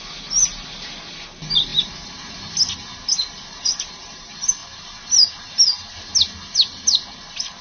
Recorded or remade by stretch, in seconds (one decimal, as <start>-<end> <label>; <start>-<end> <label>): 0.0-7.6 recorded